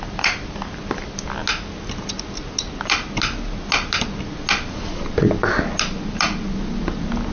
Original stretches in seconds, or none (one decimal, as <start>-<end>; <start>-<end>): 0.0-7.3